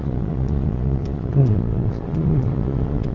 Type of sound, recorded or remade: remade